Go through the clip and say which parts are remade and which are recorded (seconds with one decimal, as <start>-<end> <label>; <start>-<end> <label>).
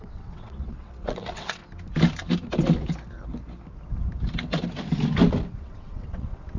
0.0-1.6 remade; 1.6-5.6 recorded; 5.6-6.6 remade